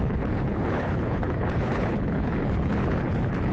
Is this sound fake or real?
fake